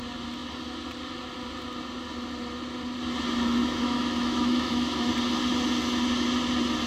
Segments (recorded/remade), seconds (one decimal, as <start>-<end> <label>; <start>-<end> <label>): 0.0-3.6 recorded; 3.6-5.1 remade; 5.1-6.9 recorded